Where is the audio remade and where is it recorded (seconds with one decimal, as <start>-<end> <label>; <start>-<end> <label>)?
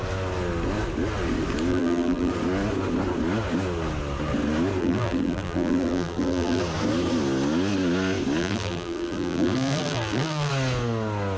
0.0-1.7 recorded; 1.7-2.3 remade; 2.3-4.8 recorded; 4.8-6.6 remade; 6.6-8.4 recorded; 8.4-10.5 remade; 10.5-11.4 recorded